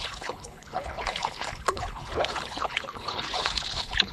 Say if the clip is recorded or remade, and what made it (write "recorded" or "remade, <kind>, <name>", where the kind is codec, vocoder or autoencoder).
remade, codec, HILCodec